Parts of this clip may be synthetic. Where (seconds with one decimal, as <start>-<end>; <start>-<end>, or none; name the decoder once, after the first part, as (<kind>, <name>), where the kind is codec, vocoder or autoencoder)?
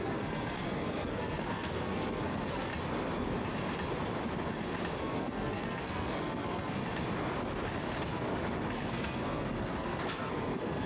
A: 0.0-2.7 (codec, SNAC); 5.0-6.8; 8.7-10.9